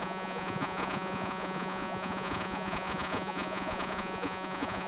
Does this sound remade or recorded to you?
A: remade